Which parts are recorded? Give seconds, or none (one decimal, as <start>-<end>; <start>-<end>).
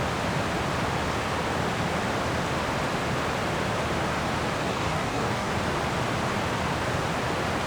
0.0-4.7; 5.5-7.7